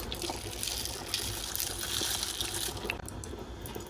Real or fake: real